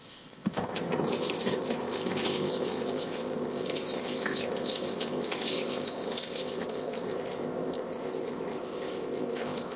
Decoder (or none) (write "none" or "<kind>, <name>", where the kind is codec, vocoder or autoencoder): codec, ZipCodec